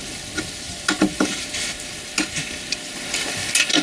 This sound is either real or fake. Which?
real